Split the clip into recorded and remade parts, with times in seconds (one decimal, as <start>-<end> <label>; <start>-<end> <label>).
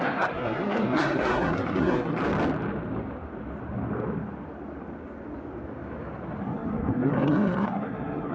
0.0-2.2 remade; 2.2-6.4 recorded; 6.4-8.3 remade